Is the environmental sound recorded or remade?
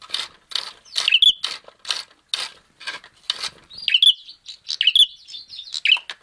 recorded